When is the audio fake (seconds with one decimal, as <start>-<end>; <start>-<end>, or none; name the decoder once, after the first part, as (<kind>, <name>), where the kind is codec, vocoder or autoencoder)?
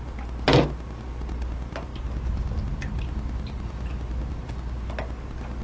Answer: none